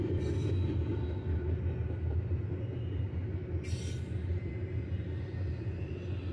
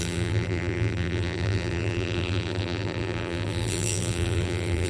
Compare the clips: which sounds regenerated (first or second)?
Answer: second